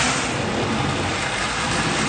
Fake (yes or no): no